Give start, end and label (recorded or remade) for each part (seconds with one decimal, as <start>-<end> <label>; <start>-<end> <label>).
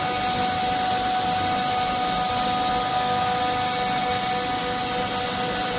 0.0-2.9 recorded; 2.9-3.4 remade; 3.4-5.8 recorded